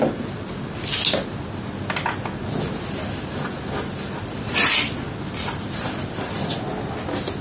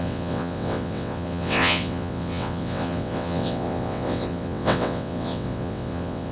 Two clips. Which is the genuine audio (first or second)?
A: first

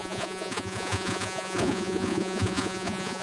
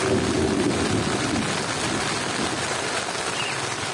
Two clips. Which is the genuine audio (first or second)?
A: second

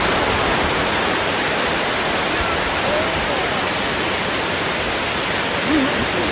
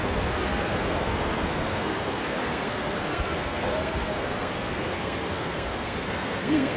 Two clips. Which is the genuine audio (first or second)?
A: first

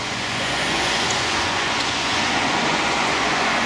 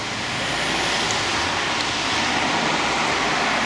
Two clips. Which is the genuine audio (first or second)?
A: second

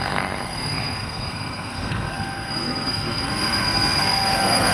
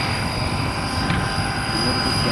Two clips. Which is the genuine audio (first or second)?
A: second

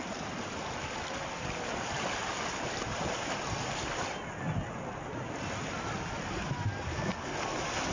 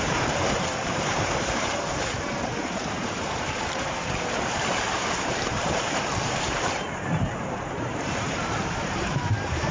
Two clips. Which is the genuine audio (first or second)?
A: first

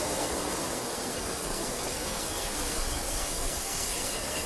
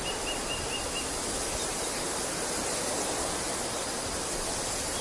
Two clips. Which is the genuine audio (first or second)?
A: second